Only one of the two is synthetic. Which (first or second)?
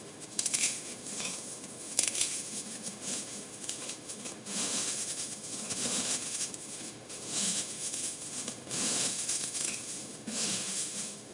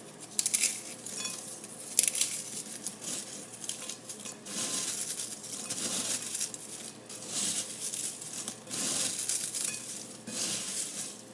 first